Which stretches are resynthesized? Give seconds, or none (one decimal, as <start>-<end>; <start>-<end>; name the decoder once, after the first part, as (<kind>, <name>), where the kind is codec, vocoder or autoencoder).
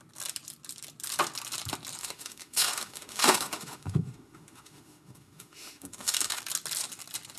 2.0-6.4 (autoencoder, DAC-VAE)